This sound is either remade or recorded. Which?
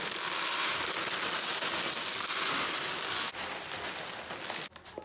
recorded